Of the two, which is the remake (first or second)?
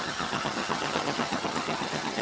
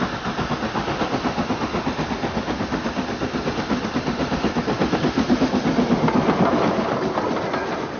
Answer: first